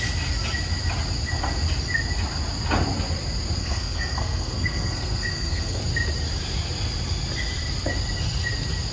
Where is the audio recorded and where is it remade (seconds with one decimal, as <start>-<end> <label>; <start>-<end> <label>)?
0.0-3.6 recorded; 3.6-5.8 remade; 5.8-8.9 recorded